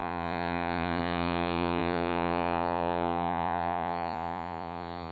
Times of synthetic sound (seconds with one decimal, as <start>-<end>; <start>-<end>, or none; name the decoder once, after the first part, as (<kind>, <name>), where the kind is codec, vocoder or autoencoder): 0.0-5.1 (vocoder, Vocos)